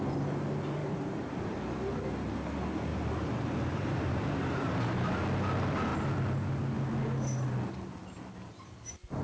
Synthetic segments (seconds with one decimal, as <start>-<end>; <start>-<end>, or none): 0.8-1.6; 2.9-5.1